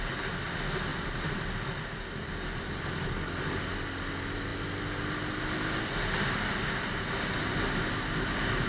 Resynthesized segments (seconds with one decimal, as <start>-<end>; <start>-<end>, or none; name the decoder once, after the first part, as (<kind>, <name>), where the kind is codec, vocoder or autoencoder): 0.9-1.4 (vocoder, BigVGAN v2)